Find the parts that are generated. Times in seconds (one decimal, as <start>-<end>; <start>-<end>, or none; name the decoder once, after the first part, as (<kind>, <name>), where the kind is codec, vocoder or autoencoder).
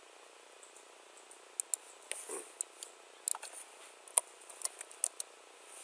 none